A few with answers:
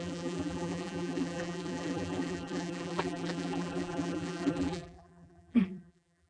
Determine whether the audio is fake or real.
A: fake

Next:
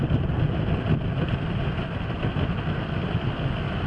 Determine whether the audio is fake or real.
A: real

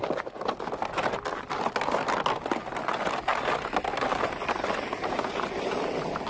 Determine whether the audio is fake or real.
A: real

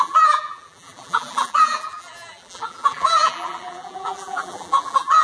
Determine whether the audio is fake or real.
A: fake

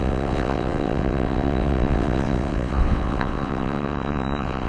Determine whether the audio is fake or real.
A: fake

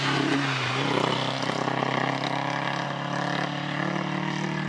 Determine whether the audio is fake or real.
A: real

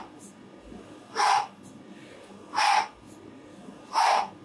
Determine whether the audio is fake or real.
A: real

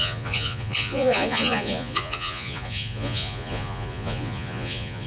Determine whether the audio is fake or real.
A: fake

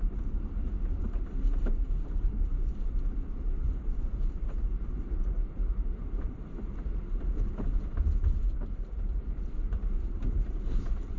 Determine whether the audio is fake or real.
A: fake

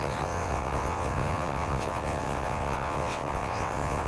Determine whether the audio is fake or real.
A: fake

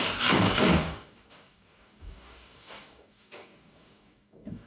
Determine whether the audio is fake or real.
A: fake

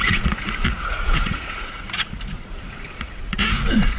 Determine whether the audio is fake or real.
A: fake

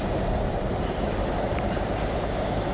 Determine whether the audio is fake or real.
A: fake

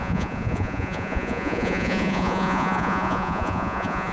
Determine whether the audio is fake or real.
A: fake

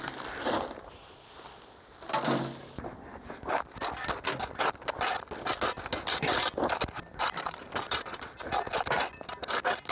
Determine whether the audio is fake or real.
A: real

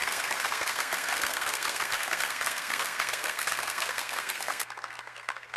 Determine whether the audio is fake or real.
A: fake